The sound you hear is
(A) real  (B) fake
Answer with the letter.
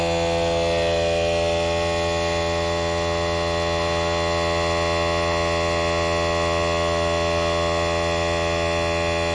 A